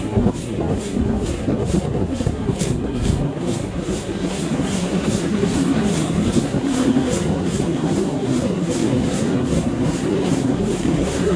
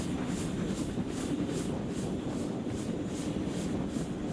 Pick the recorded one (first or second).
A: second